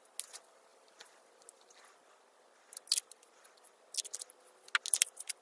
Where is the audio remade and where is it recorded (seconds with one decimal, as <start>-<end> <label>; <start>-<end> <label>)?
0.0-5.4 recorded